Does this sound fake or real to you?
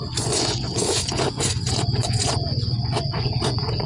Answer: fake